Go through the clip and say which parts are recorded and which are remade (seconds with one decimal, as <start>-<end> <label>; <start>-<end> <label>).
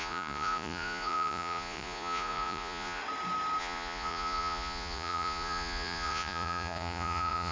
0.0-3.0 remade; 3.0-3.6 recorded; 3.6-7.5 remade